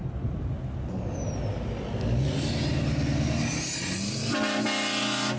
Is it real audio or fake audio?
real